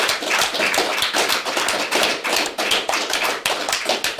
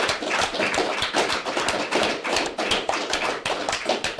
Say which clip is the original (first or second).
first